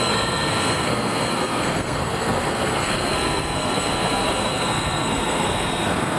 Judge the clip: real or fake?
fake